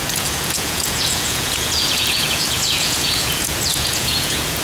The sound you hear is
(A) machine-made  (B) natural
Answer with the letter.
A